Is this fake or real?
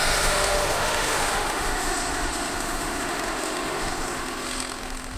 fake